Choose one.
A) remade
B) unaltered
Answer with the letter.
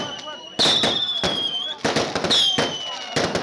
B